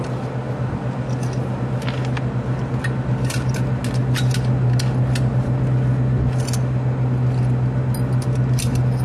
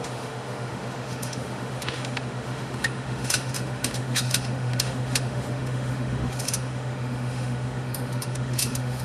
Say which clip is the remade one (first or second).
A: second